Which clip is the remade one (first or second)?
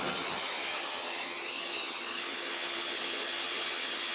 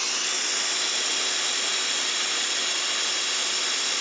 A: first